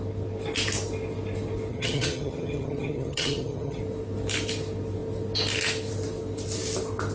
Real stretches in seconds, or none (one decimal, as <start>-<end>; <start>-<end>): 0.0-1.7; 3.8-7.1